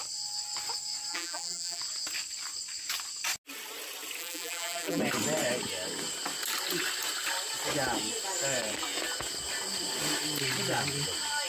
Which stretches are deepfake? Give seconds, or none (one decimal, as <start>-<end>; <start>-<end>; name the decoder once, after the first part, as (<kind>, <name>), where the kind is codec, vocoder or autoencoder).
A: 1.1-1.8 (vocoder, BigVGAN v2); 4.2-5.0

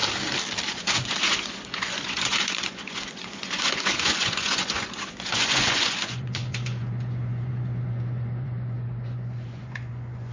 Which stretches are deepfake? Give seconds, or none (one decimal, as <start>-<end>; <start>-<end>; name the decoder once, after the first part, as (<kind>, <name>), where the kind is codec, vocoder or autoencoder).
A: 0.7-10.3 (vocoder, Vocos)